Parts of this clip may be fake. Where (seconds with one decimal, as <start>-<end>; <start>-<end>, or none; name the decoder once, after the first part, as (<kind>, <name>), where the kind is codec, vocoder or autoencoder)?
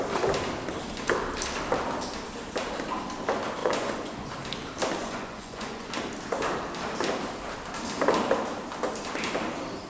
3.6-4.3 (vocoder, Vocos); 5.0-5.9